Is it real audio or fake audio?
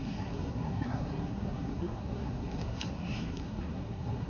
fake